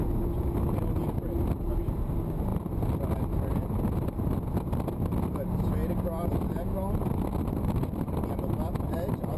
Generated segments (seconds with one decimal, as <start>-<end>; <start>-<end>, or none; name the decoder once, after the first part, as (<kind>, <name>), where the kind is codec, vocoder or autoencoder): none